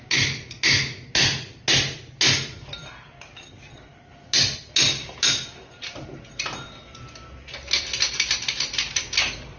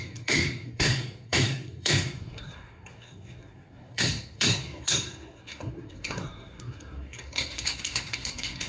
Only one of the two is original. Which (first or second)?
first